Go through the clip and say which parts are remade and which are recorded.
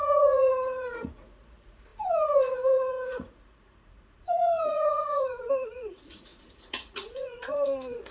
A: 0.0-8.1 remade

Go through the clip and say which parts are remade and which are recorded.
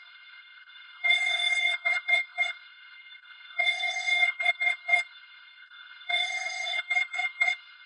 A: 0.0-7.9 remade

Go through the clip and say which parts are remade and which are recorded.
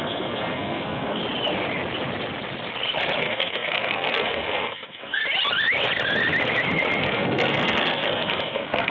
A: 0.0-1.2 remade; 1.2-3.2 recorded; 3.2-5.2 remade; 5.2-7.0 recorded; 7.0-8.9 remade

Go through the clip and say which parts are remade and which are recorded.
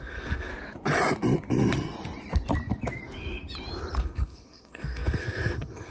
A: 0.0-0.5 remade; 0.5-4.0 recorded; 4.0-5.9 remade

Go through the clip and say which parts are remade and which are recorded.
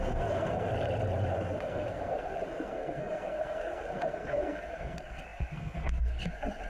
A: 0.0-0.7 remade; 0.7-1.3 recorded; 1.3-6.7 remade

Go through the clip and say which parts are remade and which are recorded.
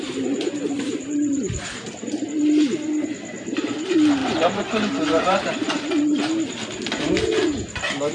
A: 0.0-0.6 recorded; 0.6-2.1 remade; 2.1-4.2 recorded; 4.2-5.5 remade; 5.5-8.1 recorded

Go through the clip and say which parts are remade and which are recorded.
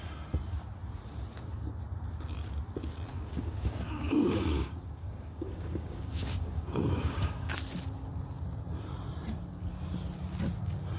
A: 0.0-3.1 recorded; 3.1-7.5 remade; 7.5-11.0 recorded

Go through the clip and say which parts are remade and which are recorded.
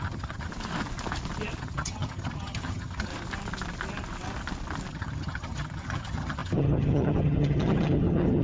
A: 0.0-0.5 remade; 0.5-1.6 recorded; 1.6-3.1 remade; 3.1-4.9 recorded; 4.9-8.4 remade